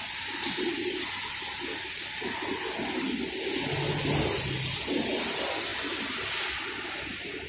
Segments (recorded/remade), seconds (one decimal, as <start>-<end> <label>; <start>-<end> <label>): 0.0-7.5 recorded